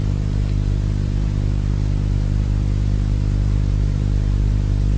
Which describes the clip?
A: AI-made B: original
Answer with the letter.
A